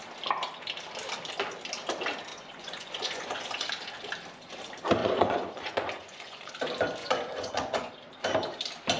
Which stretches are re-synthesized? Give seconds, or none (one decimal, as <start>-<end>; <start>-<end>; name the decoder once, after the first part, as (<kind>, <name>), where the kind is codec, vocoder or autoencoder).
2.3-3.7 (vocoder, Vocos); 5.0-6.5; 7.0-7.9